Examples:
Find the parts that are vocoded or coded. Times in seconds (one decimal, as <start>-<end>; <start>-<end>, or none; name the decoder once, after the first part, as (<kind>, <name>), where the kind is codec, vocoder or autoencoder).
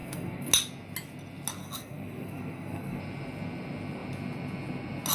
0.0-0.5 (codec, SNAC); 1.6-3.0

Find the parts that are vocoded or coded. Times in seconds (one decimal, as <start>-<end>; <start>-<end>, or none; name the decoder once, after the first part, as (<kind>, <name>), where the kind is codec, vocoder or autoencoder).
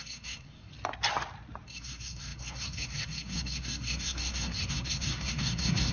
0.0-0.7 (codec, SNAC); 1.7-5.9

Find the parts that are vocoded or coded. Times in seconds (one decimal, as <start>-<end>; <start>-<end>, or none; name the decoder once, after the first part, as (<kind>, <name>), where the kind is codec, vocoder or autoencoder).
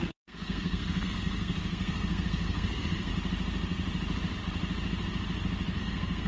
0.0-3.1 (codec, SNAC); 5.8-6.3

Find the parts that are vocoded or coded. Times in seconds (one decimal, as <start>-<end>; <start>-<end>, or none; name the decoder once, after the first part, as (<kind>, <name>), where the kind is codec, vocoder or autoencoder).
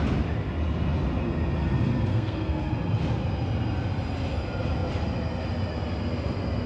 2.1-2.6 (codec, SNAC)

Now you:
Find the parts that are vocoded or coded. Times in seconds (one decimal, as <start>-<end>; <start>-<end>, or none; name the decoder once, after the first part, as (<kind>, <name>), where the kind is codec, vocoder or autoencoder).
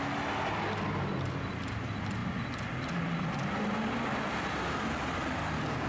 none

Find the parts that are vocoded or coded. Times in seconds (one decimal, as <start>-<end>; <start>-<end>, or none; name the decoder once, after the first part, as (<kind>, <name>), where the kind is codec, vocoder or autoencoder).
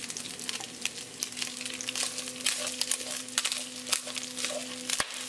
none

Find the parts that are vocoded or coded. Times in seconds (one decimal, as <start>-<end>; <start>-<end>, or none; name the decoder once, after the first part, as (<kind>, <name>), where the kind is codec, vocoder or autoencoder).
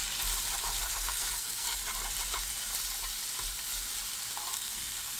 0.8-1.8 (codec, SNAC); 4.4-5.2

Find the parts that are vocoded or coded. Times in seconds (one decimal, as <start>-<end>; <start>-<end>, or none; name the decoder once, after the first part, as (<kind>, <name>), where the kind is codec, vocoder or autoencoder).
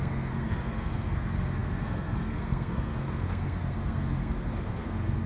0.0-5.3 (codec, SNAC)